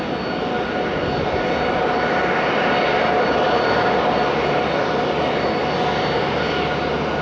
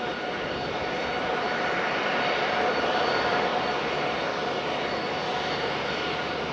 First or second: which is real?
first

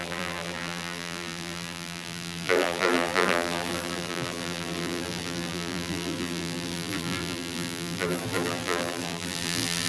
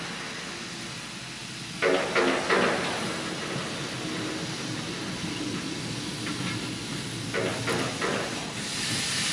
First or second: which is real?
second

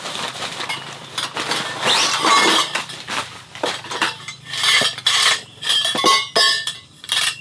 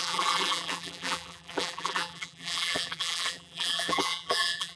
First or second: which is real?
first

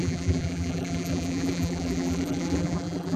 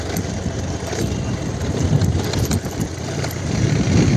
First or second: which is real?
second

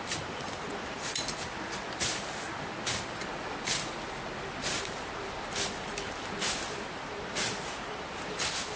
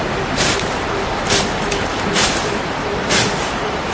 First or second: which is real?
first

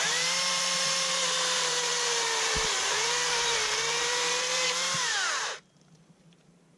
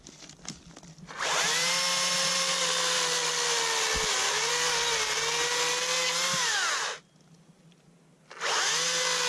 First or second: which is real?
second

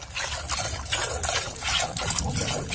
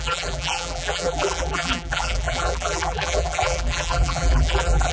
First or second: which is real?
first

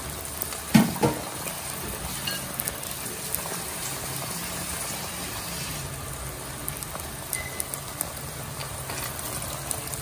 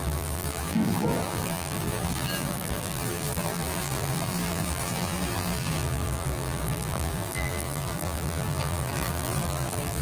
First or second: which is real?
first